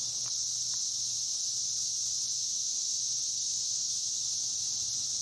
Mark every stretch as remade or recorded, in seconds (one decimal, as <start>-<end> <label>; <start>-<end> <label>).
0.0-2.4 recorded; 2.4-3.0 remade; 3.0-3.6 recorded; 3.6-4.2 remade; 4.2-5.2 recorded